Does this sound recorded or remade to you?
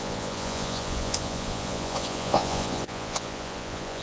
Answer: remade